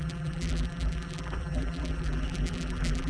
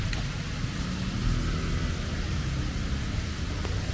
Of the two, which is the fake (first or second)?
first